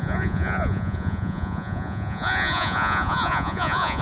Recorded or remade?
remade